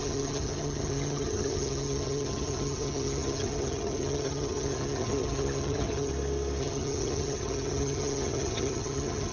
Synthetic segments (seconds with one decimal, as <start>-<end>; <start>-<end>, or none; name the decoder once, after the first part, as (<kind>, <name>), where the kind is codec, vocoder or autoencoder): 0.0-6.1 (vocoder, HiFi-GAN); 6.6-9.3